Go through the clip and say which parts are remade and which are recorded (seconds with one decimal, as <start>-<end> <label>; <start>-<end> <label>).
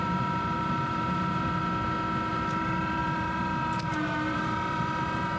0.0-1.6 remade; 1.6-2.3 recorded; 2.3-5.4 remade